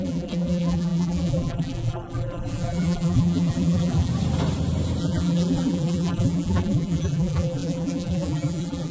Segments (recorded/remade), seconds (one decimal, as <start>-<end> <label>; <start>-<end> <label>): 0.0-4.1 remade; 4.1-5.0 recorded; 5.0-8.9 remade